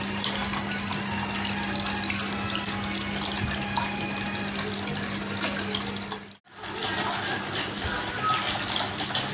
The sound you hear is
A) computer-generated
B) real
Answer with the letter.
B